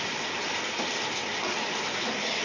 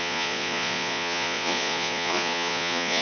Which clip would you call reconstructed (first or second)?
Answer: second